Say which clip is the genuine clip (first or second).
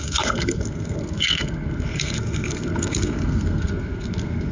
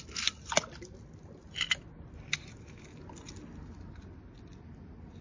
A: second